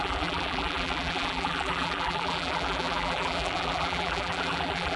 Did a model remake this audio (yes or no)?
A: yes